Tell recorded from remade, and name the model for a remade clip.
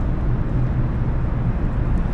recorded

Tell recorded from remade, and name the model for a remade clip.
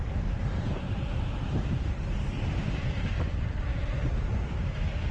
remade, vocoder, BigVGAN v2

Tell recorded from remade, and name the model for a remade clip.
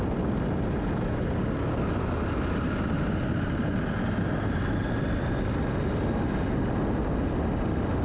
recorded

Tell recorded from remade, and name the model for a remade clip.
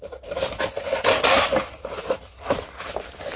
recorded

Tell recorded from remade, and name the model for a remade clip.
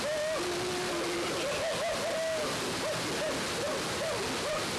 recorded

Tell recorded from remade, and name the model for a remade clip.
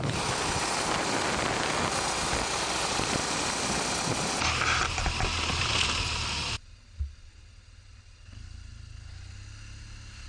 recorded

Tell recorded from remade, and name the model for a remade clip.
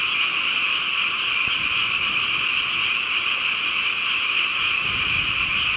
remade, vocoder, BigVGAN v2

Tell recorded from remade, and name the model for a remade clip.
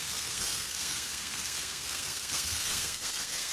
remade, codec, SNAC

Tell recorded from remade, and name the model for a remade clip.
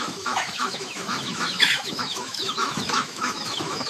remade, autoencoder, DAC-VAE